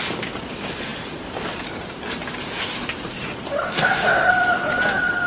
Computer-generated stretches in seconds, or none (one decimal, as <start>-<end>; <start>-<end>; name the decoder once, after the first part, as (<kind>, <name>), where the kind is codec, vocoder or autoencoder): 3.6-4.3 (codec, SNAC)